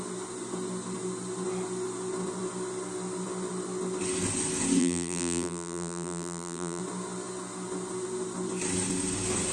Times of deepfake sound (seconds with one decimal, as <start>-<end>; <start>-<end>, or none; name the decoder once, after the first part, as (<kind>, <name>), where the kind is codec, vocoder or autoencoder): 4.8-6.8 (vocoder, BigVGAN v2)